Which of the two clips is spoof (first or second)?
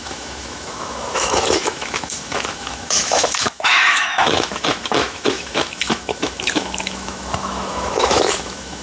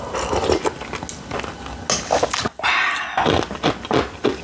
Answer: first